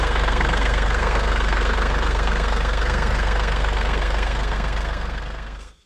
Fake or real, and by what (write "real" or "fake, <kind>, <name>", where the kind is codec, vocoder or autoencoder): fake, codec, SNAC